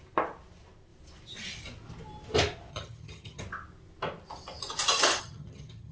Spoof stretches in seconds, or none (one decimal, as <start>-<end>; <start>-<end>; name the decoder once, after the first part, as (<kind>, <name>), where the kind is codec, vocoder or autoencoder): 2.7-3.4 (vocoder, HiFi-GAN); 5.2-5.9